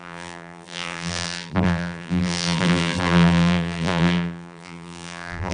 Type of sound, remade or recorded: remade